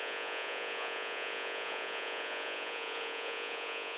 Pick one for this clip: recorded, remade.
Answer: remade